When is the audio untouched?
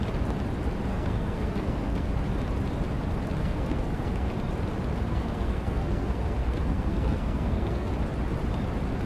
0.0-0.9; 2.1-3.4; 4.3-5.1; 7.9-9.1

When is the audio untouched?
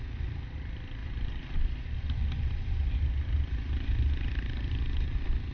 0.0-5.5